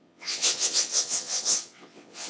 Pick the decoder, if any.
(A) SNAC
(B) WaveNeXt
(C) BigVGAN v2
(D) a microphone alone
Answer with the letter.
B